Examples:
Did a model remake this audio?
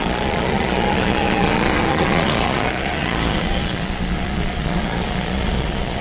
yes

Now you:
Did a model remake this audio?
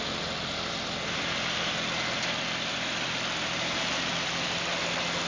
no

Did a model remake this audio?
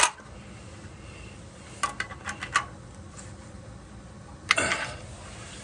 no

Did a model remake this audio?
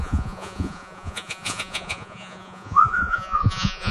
yes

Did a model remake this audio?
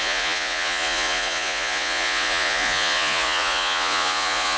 yes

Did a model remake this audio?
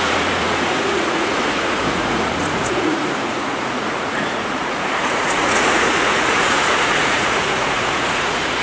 yes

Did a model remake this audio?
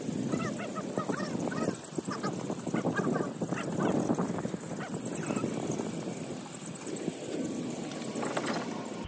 no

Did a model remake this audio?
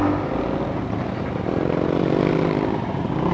no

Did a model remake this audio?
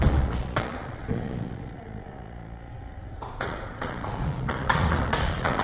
yes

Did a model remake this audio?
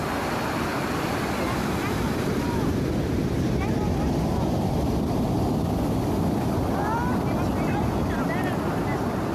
no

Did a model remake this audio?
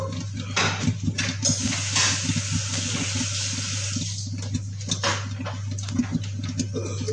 no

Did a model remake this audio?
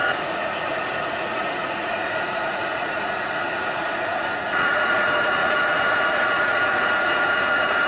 yes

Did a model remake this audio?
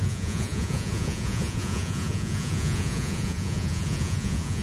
yes